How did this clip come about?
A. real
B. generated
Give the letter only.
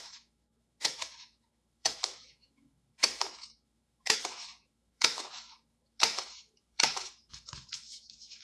B